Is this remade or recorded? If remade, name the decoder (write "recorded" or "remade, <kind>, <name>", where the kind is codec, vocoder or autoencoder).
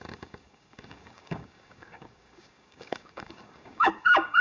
remade, codec, DAC